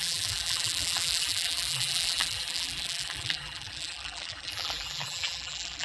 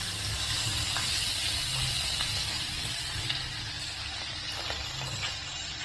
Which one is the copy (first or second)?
first